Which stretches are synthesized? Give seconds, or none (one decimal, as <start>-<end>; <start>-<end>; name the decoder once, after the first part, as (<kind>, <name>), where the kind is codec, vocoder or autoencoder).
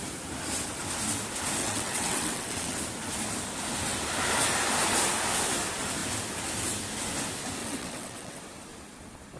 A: 1.6-2.8 (vocoder, WaveNeXt); 7.6-8.4